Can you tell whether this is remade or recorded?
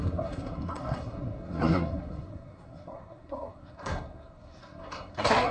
remade